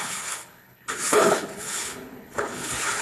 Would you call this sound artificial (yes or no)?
yes